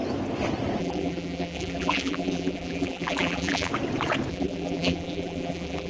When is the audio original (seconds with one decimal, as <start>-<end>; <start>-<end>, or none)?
0.0-0.8; 3.7-4.3